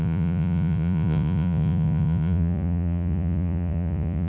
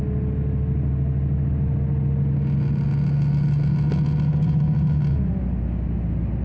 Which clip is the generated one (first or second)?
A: first